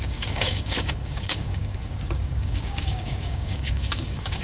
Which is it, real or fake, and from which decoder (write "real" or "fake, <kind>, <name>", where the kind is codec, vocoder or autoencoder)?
fake, codec, DAC